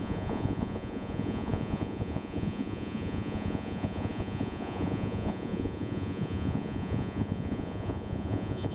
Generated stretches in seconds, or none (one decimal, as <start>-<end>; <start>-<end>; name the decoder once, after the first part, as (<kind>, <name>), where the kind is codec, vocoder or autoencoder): 0.0-8.7 (vocoder, Vocos)